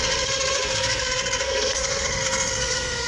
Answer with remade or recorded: remade